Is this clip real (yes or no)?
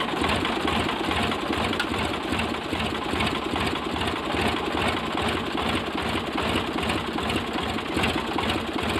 yes